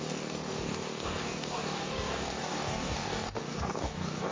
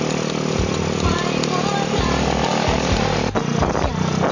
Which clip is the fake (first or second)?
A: first